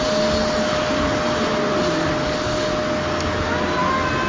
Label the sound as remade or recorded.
recorded